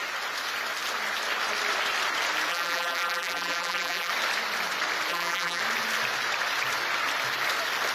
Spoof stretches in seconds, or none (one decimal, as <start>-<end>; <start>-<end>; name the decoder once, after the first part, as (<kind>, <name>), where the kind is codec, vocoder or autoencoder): 2.5-4.1 (vocoder, BigVGAN v2); 5.1-5.6